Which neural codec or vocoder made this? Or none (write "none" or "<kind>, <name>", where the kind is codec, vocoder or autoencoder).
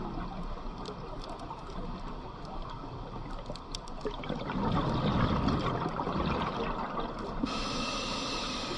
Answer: none